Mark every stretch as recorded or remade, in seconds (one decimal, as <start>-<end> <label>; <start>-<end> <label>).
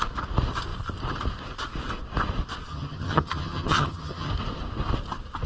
0.0-2.7 recorded; 2.7-4.3 remade; 4.3-5.5 recorded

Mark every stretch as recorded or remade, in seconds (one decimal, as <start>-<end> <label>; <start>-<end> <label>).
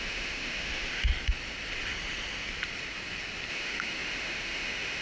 0.0-1.1 remade; 1.1-3.5 recorded; 3.5-5.0 remade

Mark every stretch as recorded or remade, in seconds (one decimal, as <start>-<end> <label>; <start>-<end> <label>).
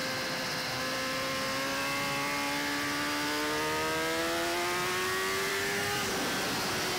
0.0-5.5 recorded; 5.5-6.1 remade; 6.1-7.0 recorded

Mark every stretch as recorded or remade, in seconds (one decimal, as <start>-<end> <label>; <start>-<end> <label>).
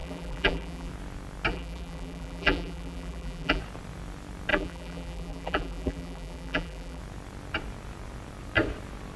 0.0-0.9 remade; 0.9-1.5 recorded; 1.5-3.6 remade; 3.6-4.5 recorded; 4.5-7.0 remade; 7.0-9.2 recorded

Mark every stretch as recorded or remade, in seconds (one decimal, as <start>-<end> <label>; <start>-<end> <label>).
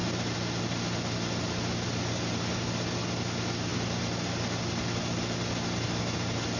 0.0-6.6 recorded